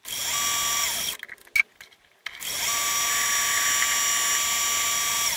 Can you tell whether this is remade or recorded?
recorded